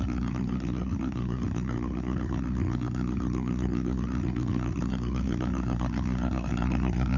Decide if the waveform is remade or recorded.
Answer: remade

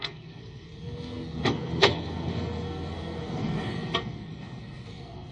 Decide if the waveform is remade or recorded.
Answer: remade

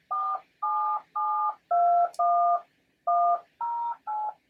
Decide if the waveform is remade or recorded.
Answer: recorded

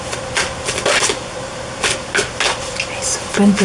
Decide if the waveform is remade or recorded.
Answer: recorded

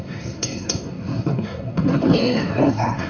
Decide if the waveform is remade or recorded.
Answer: remade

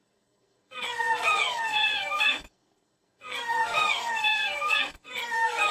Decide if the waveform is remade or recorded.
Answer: remade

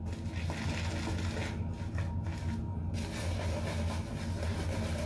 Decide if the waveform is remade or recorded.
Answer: recorded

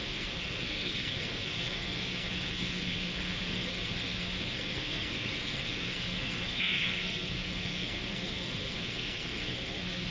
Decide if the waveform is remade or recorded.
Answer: remade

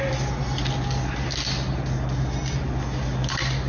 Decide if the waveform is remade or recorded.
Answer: recorded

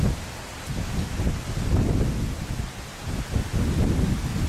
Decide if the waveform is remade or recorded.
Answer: recorded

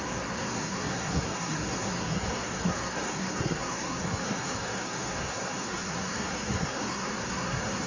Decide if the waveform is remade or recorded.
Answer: remade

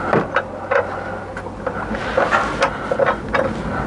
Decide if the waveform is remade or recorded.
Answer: recorded